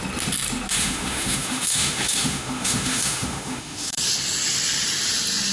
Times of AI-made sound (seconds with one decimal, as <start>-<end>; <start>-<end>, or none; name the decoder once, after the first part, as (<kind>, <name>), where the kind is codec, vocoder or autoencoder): 0.7-4.0 (autoencoder, DAC-VAE)